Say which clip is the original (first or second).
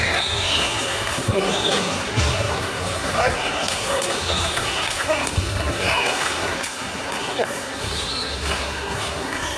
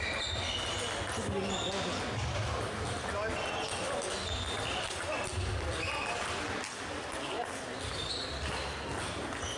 second